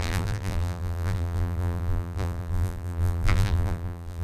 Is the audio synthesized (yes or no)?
yes